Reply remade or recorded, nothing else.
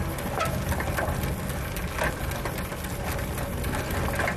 recorded